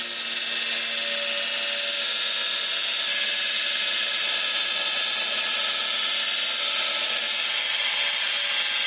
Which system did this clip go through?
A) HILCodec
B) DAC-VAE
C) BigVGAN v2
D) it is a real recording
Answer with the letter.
D